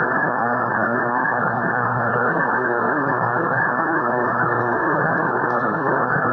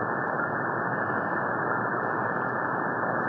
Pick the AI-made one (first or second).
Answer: first